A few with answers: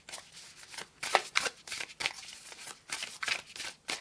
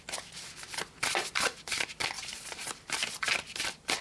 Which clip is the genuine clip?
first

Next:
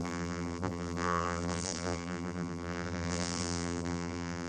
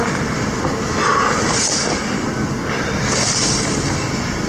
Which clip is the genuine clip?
second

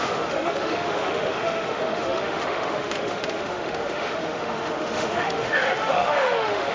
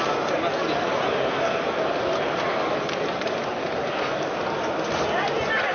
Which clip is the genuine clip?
second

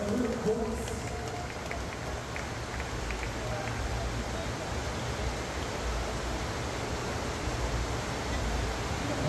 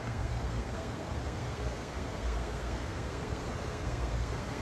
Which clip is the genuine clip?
first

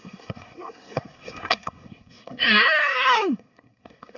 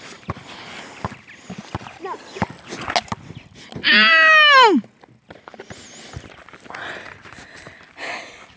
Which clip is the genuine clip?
second